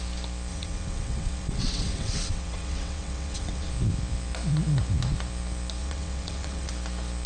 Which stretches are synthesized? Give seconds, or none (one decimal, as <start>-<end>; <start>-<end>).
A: 0.5-3.7; 5.8-6.7